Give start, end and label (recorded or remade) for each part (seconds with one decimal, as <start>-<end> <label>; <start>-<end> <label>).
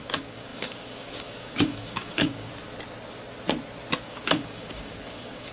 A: 0.0-2.5 remade; 2.5-4.0 recorded; 4.0-5.5 remade